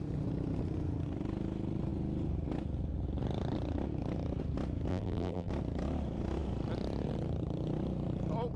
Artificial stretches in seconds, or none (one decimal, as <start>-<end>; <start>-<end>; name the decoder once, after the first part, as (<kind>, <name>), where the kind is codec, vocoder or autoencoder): 4.9-5.5 (vocoder, BigVGAN v2)